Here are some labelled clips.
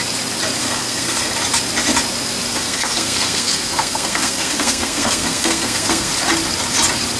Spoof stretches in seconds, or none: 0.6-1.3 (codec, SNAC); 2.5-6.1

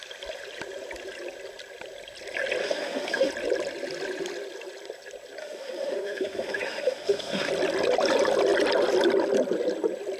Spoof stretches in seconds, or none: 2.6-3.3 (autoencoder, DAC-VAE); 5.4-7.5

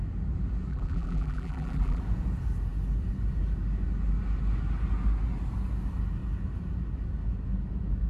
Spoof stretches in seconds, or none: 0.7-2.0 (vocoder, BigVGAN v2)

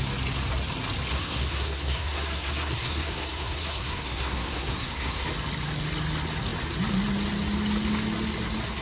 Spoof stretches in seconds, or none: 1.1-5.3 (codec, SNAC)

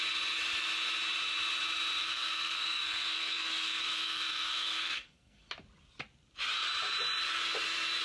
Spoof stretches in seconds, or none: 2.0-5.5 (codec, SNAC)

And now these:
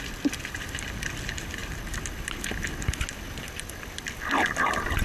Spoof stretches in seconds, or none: none